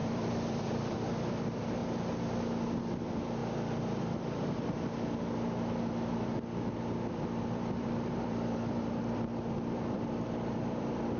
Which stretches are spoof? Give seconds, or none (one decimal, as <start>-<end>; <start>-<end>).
0.0-1.8; 2.9-3.4; 7.1-11.2